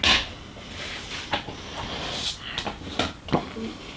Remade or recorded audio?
recorded